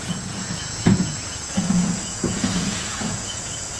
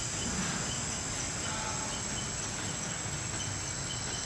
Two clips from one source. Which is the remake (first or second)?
first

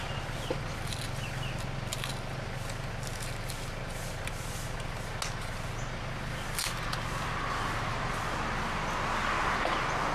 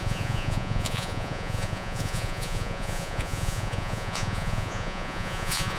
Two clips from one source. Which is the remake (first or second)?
second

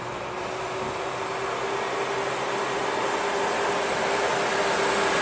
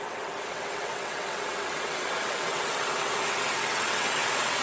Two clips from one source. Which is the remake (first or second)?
second